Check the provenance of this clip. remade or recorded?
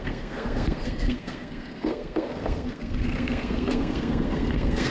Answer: remade